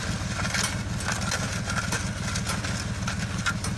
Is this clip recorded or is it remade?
recorded